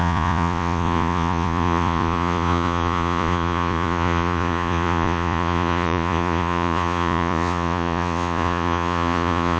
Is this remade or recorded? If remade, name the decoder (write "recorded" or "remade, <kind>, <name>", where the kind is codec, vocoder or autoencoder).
remade, vocoder, Vocos